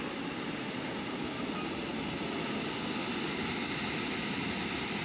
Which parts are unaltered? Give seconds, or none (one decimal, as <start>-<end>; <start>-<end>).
0.0-5.0